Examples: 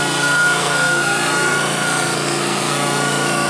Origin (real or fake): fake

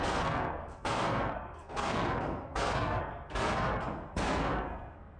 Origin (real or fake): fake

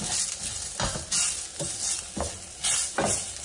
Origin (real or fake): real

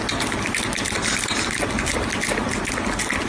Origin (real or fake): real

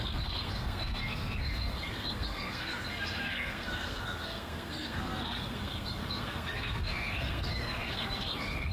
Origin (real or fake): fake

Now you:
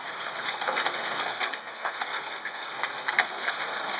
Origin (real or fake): fake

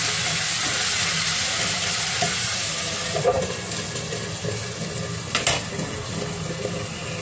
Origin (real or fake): real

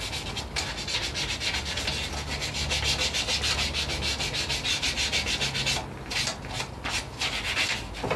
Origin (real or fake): real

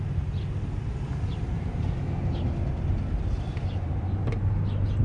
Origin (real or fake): real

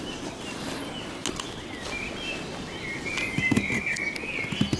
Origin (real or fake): real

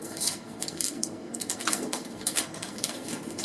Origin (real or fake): fake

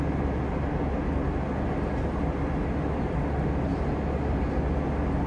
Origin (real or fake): real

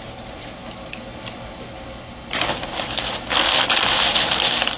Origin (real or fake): real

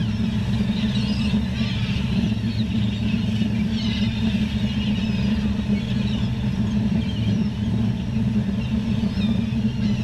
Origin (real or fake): real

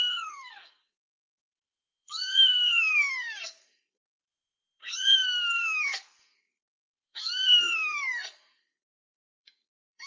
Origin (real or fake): fake